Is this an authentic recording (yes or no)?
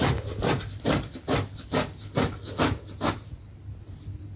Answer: yes